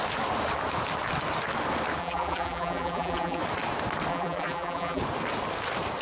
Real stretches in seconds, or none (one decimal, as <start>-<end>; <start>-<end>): 0.0-2.0; 3.4-4.1; 5.0-6.0

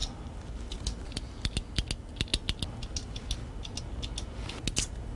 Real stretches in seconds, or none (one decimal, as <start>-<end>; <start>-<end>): 1.5-5.2

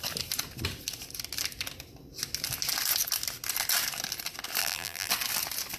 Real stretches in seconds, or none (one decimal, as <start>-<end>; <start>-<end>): 0.0-4.6; 5.1-5.8

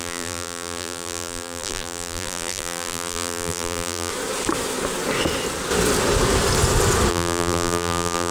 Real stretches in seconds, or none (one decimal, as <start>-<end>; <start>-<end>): 4.1-7.1

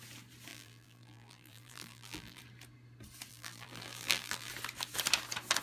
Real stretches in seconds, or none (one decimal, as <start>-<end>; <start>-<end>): 0.0-0.5; 2.4-3.3; 4.5-5.6